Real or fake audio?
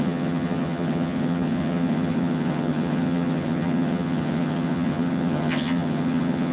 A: fake